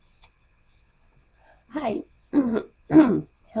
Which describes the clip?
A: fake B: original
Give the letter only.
A